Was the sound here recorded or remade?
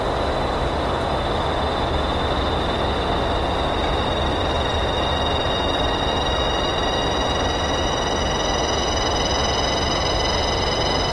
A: recorded